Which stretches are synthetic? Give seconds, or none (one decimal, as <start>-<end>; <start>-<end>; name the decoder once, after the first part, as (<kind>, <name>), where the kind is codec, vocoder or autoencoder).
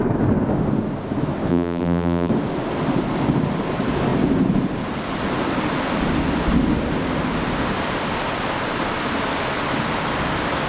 1.5-2.3 (vocoder, BigVGAN v2)